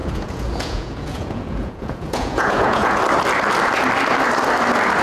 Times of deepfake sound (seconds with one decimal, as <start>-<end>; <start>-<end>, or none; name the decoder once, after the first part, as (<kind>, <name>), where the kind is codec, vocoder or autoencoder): 0.0-3.0 (vocoder, Vocos)